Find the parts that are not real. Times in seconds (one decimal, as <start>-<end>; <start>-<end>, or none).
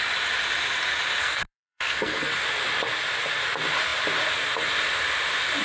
1.2-2.3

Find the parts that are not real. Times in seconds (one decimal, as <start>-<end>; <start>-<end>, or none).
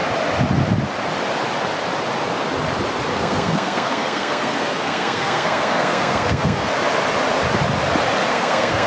3.1-6.7; 8.3-8.9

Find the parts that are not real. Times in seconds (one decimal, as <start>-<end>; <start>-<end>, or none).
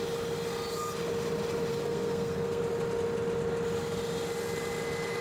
1.7-2.6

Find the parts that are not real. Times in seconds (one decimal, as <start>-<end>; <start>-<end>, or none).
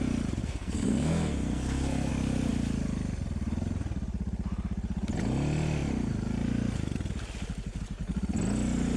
0.4-2.1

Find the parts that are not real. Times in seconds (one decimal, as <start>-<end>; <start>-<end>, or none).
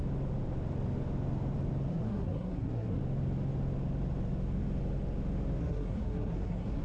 1.9-3.0; 5.6-6.8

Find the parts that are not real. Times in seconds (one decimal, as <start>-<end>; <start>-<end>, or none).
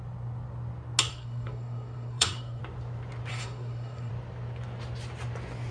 1.1-2.6; 3.3-4.1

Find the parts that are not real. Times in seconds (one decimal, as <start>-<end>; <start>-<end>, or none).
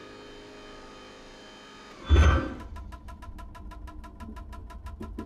none